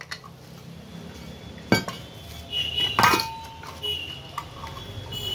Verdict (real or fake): real